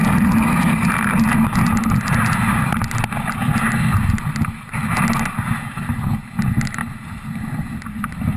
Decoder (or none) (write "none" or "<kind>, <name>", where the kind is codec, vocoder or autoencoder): none